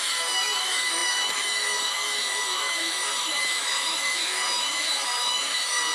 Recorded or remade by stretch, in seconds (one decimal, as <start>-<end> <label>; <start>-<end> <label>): 0.0-5.9 remade

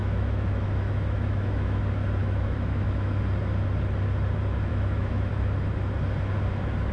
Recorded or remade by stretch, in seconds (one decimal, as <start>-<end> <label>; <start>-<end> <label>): 0.0-1.8 remade; 1.8-2.2 recorded; 2.2-3.2 remade; 3.2-4.7 recorded; 4.7-5.3 remade; 5.3-6.9 recorded

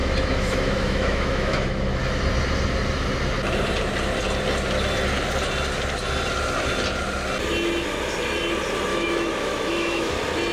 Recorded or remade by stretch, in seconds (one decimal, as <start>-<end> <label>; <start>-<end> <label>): 0.0-2.0 remade; 2.0-8.9 recorded; 8.9-10.1 remade; 10.1-10.5 recorded